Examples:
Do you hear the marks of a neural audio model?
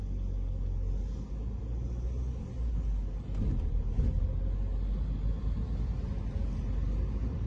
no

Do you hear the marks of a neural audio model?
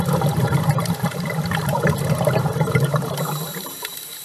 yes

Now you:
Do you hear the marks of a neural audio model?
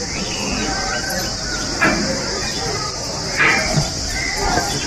no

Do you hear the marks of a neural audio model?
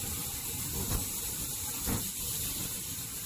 yes